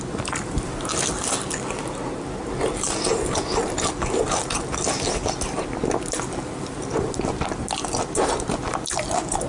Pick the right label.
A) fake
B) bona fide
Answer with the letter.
B